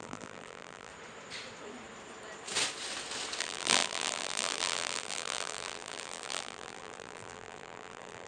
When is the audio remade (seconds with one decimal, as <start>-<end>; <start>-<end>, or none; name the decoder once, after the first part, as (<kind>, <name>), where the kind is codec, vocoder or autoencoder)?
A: 0.0-0.9 (vocoder, BigVGAN v2); 3.4-8.3